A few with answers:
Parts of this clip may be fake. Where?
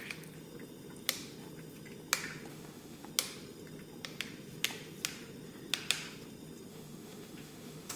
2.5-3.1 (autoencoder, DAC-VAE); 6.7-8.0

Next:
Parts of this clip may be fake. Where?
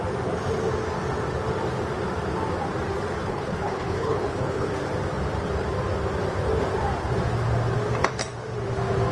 3.3-4.7 (codec, HILCodec)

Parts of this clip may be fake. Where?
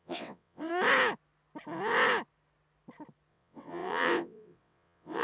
0.0-0.7 (vocoder, WaveNeXt); 3.3-5.2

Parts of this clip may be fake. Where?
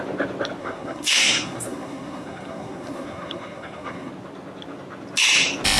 0.6-4.1 (codec, SNAC)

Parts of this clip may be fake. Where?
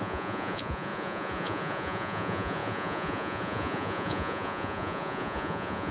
0.0-5.9 (vocoder, Vocos)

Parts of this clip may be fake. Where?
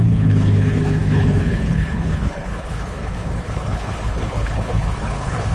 0.0-5.5 (codec, HILCodec)